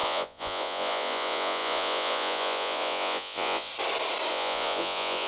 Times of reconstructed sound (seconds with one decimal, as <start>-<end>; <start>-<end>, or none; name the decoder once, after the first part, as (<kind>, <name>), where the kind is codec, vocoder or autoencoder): 0.0-3.7 (vocoder, Vocos); 4.3-5.3